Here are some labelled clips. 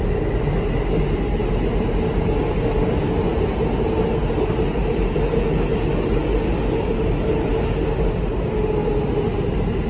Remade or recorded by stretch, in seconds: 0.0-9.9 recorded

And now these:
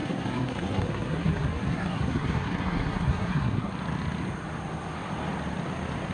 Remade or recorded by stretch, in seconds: 0.0-3.7 remade; 3.7-6.1 recorded

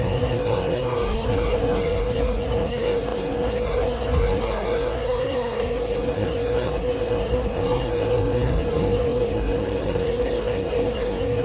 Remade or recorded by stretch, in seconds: 0.0-11.4 remade

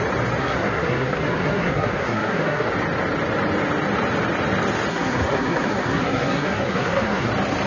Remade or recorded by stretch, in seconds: 0.0-0.4 recorded; 0.4-2.7 remade; 2.7-4.9 recorded; 4.9-7.3 remade; 7.3-7.7 recorded

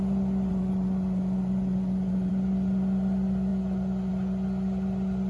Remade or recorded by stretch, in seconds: 0.0-0.5 recorded; 0.5-2.3 remade; 2.3-5.3 recorded

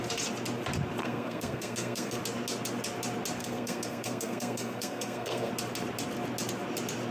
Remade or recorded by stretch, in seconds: 0.0-1.0 recorded; 1.0-2.2 remade; 2.2-3.4 recorded; 3.4-5.5 remade; 5.5-7.1 recorded

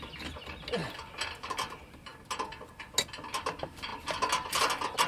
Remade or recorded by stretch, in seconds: 0.0-5.1 recorded

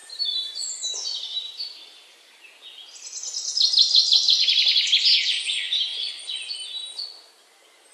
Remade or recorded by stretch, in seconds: 0.0-5.9 recorded; 5.9-6.5 remade; 6.5-7.9 recorded